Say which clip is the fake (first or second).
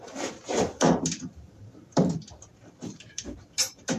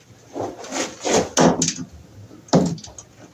first